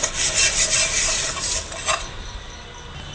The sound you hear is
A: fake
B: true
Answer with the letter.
B